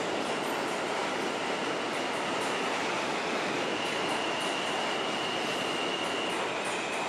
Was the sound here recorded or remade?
recorded